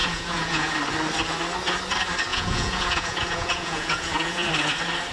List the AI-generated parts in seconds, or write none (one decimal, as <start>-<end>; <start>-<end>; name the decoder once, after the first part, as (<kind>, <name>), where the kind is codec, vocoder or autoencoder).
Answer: 0.0-0.7 (vocoder, Vocos); 2.3-4.5